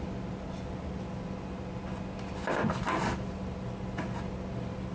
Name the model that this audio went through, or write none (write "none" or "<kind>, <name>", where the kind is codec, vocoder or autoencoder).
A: none